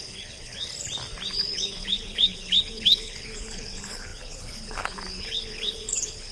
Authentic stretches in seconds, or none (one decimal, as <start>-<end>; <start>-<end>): 0.7-1.3